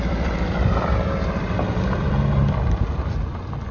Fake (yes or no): yes